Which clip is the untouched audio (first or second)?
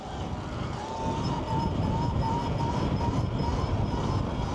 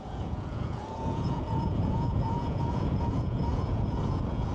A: first